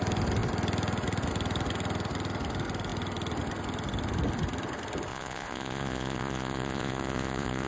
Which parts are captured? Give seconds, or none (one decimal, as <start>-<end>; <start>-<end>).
0.0-5.1

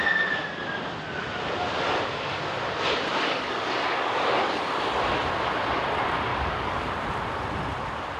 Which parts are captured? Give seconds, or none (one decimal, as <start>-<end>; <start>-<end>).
0.0-3.1; 4.6-6.3; 6.9-8.2

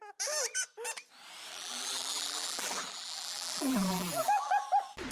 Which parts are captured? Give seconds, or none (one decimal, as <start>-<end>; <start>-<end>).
0.0-1.5; 4.6-5.1

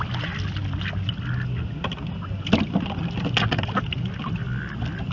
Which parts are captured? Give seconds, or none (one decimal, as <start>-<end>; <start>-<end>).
0.0-5.1

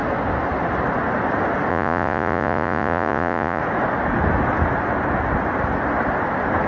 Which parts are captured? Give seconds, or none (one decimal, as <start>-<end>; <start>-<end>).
0.0-1.7; 3.6-6.7